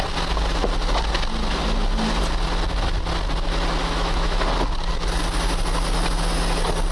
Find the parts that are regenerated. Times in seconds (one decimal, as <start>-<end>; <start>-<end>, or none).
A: 3.8-4.4